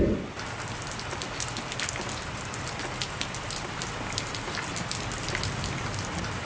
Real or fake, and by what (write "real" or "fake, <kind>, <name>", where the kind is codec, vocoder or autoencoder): real